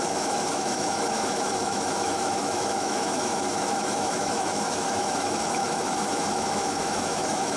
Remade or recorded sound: remade